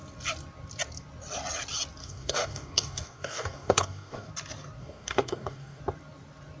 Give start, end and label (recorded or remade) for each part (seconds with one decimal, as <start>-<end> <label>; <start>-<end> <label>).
0.0-2.0 recorded; 2.0-4.3 remade; 4.3-4.8 recorded; 4.8-5.8 remade; 5.8-6.6 recorded